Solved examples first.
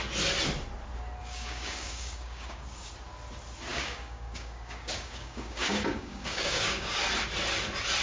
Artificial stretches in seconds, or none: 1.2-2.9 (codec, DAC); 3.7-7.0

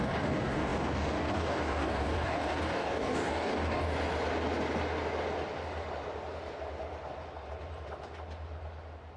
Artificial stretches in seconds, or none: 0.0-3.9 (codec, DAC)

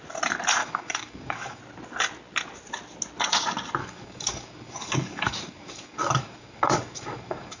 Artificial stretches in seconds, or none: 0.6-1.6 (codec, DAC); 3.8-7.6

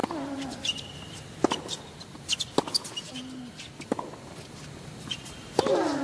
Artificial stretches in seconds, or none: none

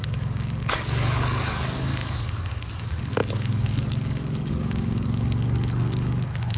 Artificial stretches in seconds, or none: 0.0-6.6 (codec, DAC)